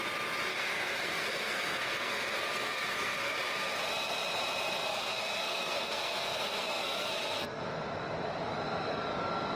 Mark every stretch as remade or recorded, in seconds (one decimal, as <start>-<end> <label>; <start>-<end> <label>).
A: 0.0-0.5 recorded; 0.5-3.4 remade; 3.4-4.9 recorded; 4.9-7.6 remade; 7.6-9.6 recorded

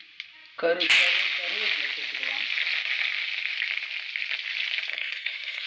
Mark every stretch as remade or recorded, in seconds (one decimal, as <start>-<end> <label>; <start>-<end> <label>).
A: 0.0-4.9 recorded; 4.9-5.7 remade

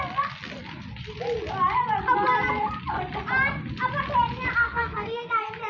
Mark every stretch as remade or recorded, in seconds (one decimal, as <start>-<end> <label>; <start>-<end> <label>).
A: 0.0-4.6 recorded; 4.6-5.3 remade; 5.3-5.7 recorded

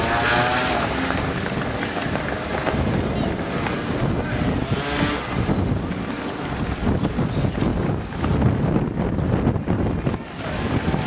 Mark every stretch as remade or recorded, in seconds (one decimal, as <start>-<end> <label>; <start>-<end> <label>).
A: 0.0-11.1 recorded

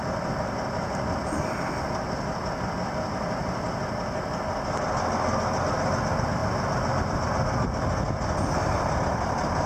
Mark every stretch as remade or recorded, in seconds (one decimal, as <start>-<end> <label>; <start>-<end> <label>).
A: 0.0-9.7 recorded

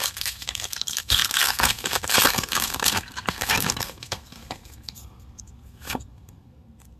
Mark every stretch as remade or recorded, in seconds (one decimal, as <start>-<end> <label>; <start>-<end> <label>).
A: 0.0-7.0 remade

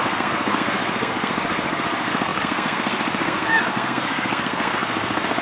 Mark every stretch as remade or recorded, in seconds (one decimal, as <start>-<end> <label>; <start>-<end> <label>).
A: 0.0-5.4 remade